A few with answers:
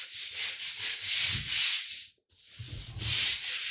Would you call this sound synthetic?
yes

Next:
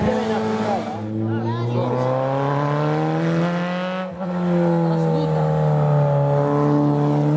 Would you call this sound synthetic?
no